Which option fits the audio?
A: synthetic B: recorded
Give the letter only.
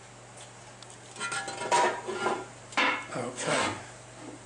B